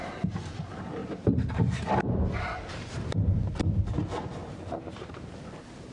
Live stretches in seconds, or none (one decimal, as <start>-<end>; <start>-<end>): 0.0-1.0; 3.5-4.4; 5.4-5.9